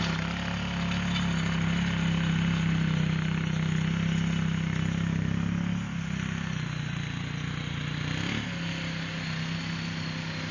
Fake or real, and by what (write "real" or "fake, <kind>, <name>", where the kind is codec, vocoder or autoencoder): real